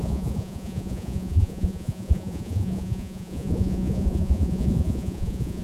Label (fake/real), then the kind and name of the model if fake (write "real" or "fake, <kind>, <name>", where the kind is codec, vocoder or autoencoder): fake, vocoder, Vocos